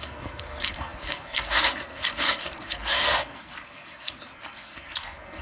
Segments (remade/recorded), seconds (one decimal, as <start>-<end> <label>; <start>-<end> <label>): 0.0-5.4 remade